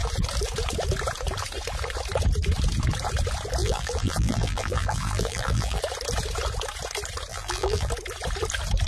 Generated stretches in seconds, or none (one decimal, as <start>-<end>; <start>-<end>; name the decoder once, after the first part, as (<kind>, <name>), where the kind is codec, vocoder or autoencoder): 3.6-5.8 (vocoder, BigVGAN v2); 7.3-7.9